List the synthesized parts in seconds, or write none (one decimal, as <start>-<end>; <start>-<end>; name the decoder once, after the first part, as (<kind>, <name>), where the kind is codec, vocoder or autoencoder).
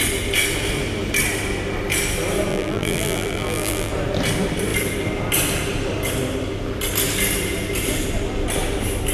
2.5-3.9 (vocoder, BigVGAN v2)